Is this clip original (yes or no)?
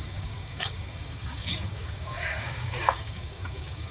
no